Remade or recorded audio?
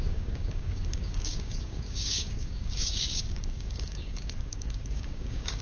remade